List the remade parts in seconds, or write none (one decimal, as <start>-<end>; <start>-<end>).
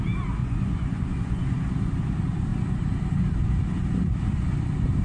0.4-1.9